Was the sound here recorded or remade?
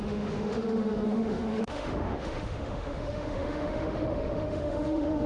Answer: remade